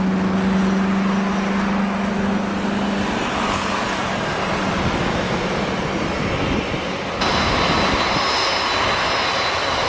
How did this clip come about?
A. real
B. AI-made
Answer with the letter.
A